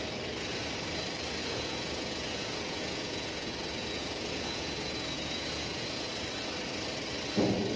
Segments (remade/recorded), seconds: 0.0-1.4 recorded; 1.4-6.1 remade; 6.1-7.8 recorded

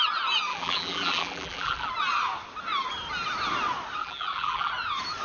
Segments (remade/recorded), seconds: 0.0-0.5 recorded; 0.5-1.9 remade; 1.9-4.0 recorded; 4.0-4.7 remade; 4.7-5.2 recorded

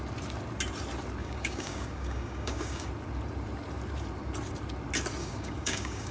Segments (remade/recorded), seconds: 0.0-1.2 recorded; 1.2-2.9 remade; 2.9-5.2 recorded; 5.2-6.1 remade

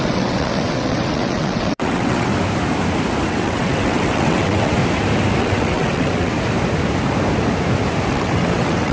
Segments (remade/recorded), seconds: 0.0-2.3 remade; 2.3-3.2 recorded; 3.2-4.8 remade; 4.8-5.4 recorded; 5.4-6.3 remade; 6.3-8.1 recorded; 8.1-8.9 remade

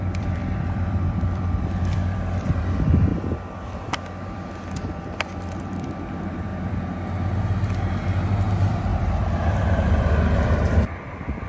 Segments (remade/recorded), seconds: 0.0-6.5 remade; 6.5-8.5 recorded; 8.5-11.5 remade

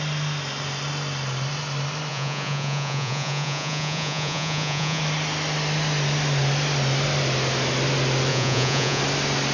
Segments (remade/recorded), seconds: 0.0-2.1 recorded; 2.1-5.0 remade; 5.0-8.3 recorded; 8.3-9.0 remade; 9.0-9.5 recorded

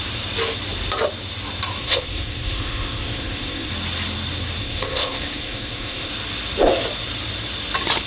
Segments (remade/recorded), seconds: 0.0-1.8 recorded; 1.8-3.7 remade; 3.7-4.6 recorded; 4.6-6.1 remade; 6.1-8.1 recorded

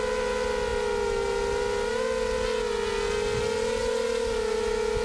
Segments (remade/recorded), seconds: 0.0-5.0 recorded